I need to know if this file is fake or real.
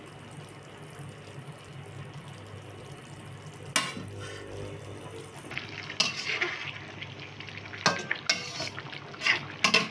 real